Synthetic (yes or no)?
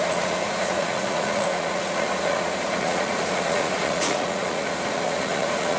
yes